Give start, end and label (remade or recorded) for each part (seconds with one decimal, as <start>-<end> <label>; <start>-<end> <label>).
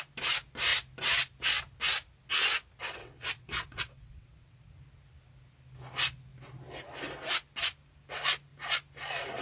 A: 0.0-3.0 recorded; 3.0-4.7 remade; 4.7-9.4 recorded